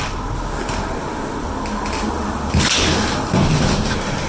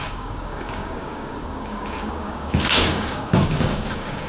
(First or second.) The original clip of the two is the first